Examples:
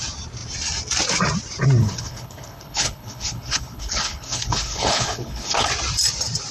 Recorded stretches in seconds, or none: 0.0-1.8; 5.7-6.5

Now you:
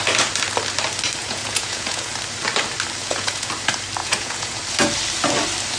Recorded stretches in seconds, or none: 0.0-1.2; 2.1-3.0; 3.5-4.0; 4.6-5.8

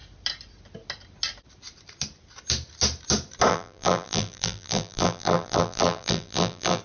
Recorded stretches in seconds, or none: 0.0-3.5

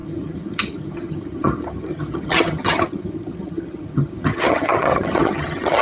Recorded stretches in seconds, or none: none